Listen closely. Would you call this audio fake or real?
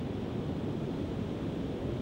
real